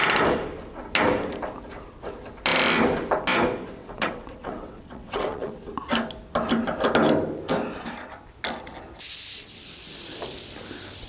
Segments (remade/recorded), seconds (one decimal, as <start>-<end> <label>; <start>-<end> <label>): 0.0-3.8 recorded; 3.8-5.5 remade; 5.5-11.1 recorded